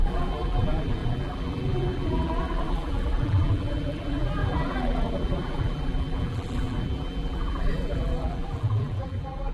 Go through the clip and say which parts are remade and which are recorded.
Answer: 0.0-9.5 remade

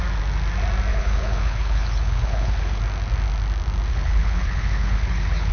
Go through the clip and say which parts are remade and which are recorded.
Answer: 0.0-0.9 recorded; 0.9-2.8 remade; 2.8-3.9 recorded; 3.9-5.5 remade

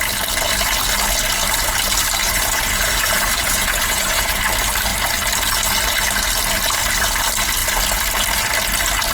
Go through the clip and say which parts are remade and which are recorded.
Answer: 0.0-2.2 recorded; 2.2-4.4 remade; 4.4-9.1 recorded

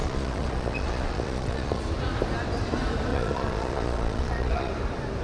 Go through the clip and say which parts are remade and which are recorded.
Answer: 0.0-1.8 remade; 1.8-3.1 recorded; 3.1-4.7 remade; 4.7-5.2 recorded

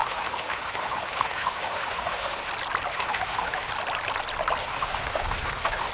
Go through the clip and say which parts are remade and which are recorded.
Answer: 0.0-2.5 remade; 2.5-2.9 recorded; 2.9-3.7 remade; 3.7-4.6 recorded; 4.6-5.9 remade

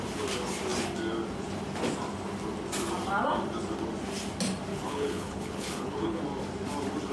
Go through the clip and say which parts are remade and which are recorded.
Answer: 0.0-4.7 recorded; 4.7-6.2 remade; 6.2-7.1 recorded

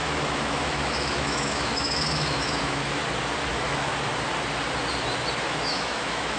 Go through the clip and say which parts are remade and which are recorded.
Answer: 0.0-3.0 remade; 3.0-3.5 recorded; 3.5-3.9 remade; 3.9-5.4 recorded; 5.4-6.4 remade